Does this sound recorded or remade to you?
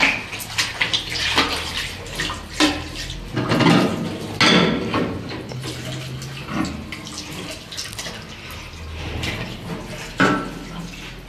recorded